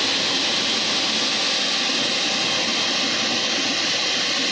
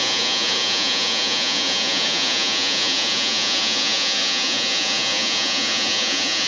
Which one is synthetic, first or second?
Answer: second